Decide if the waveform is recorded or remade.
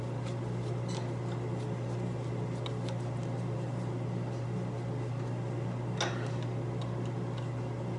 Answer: recorded